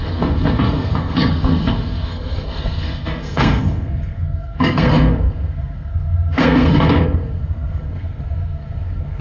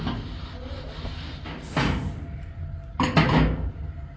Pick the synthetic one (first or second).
first